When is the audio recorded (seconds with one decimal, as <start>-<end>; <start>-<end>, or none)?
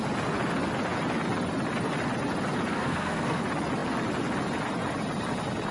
0.0-2.7; 3.4-5.7